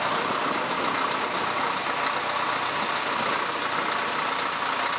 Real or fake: real